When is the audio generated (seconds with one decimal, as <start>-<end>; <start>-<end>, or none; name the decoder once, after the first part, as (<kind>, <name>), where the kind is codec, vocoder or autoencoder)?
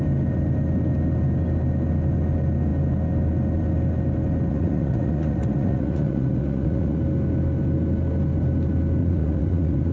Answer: 4.5-7.0 (vocoder, Vocos); 9.0-9.9